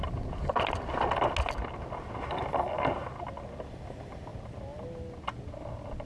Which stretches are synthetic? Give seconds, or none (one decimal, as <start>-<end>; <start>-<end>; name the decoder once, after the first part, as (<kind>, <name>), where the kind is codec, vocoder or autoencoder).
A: none